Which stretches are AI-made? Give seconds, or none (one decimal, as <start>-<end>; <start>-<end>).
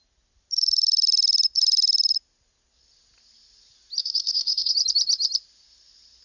4.0-4.7